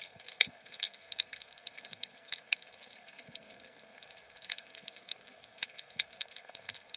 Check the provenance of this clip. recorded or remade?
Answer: remade